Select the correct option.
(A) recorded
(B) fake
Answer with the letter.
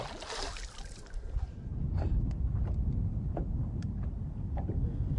A